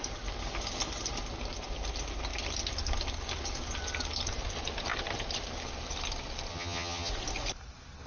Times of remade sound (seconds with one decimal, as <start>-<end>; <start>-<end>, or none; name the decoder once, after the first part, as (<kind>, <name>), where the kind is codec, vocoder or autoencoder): 6.5-7.1 (vocoder, HiFi-GAN)